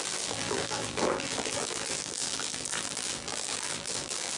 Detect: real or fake fake